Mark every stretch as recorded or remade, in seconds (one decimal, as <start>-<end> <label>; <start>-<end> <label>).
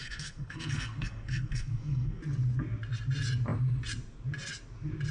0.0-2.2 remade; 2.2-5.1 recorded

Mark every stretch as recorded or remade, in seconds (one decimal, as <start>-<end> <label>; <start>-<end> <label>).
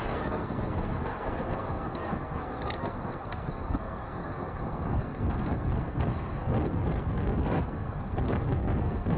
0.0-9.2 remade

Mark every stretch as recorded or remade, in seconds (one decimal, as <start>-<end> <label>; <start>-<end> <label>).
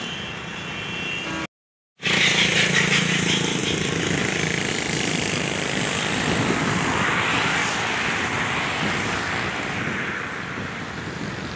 0.0-11.6 recorded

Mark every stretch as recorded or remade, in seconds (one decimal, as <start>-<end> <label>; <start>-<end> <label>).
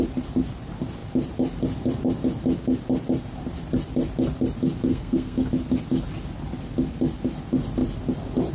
0.0-4.9 recorded; 4.9-5.5 remade; 5.5-8.5 recorded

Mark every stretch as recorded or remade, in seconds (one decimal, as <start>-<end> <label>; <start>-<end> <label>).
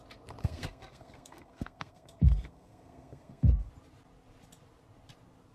0.0-0.4 recorded; 0.4-3.7 remade; 3.7-5.5 recorded